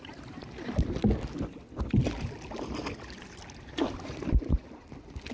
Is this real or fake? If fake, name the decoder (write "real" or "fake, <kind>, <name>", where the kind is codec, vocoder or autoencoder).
real